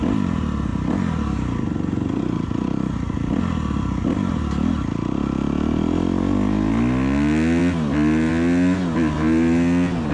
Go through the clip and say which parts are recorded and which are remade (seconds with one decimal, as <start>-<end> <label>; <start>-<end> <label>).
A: 0.0-10.1 recorded